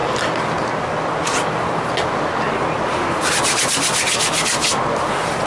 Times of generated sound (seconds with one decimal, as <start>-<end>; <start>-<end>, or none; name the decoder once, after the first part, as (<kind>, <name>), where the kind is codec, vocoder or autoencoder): none